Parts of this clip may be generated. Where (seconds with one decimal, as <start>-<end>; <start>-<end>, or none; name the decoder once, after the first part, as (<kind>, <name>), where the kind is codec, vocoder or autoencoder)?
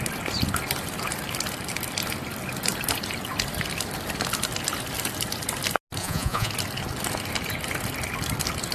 6.0-6.5 (vocoder, Vocos)